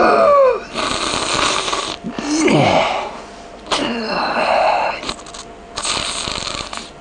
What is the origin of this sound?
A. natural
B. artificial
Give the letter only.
A